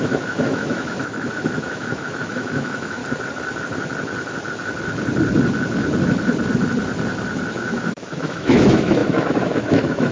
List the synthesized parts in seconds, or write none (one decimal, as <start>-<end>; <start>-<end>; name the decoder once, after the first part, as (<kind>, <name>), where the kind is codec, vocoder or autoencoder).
0.0-3.0 (autoencoder, DAC-VAE); 7.5-10.1